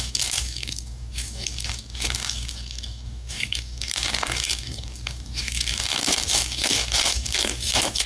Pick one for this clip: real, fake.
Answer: fake